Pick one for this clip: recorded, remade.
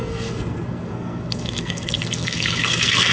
remade